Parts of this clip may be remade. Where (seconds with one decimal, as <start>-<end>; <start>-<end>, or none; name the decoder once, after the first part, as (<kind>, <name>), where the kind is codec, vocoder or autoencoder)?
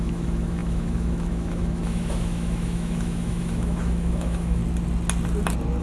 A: 0.0-4.6 (autoencoder, DAC-VAE)